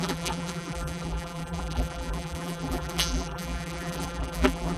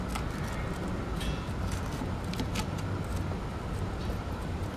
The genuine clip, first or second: second